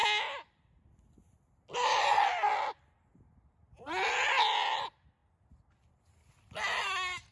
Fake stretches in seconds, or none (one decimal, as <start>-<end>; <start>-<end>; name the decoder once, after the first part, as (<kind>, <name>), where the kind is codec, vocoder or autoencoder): none